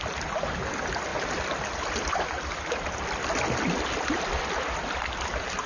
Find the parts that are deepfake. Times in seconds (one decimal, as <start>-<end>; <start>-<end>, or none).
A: none